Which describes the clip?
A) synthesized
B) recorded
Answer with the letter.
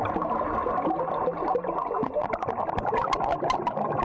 B